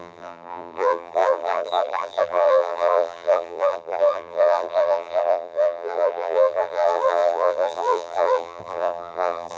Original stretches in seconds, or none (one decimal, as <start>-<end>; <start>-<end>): none